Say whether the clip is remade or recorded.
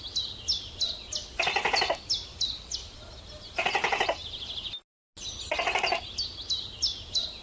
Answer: recorded